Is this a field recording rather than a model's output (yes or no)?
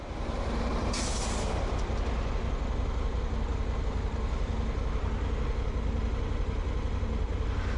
yes